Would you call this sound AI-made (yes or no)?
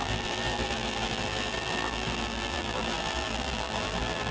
yes